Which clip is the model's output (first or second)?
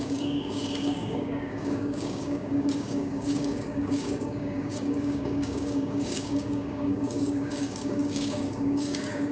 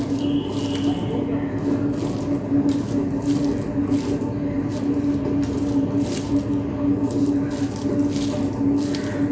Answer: first